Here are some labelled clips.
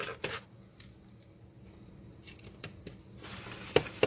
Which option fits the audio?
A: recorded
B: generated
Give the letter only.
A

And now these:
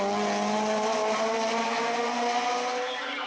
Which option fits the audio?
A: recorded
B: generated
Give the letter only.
A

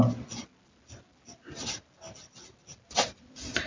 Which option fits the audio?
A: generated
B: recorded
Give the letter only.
B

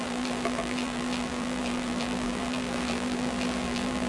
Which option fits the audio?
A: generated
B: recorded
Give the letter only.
A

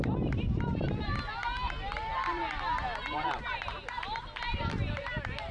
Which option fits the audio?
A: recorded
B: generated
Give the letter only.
A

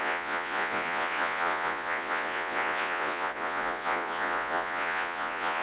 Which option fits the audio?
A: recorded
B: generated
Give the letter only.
B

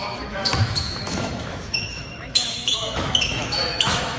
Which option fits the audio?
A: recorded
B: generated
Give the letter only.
B